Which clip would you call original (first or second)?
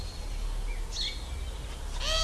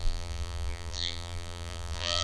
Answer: first